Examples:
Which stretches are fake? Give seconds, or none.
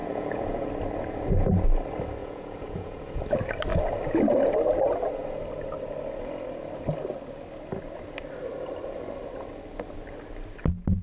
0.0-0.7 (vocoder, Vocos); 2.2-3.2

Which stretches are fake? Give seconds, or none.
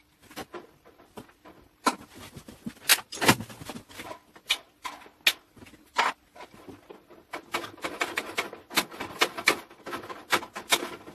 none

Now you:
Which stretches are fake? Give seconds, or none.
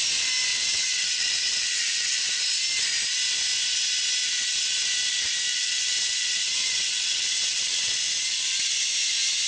0.5-2.4 (vocoder, WaveNeXt); 5.5-7.9